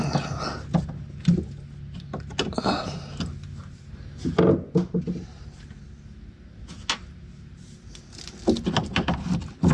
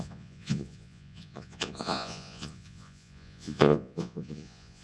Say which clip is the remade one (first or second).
second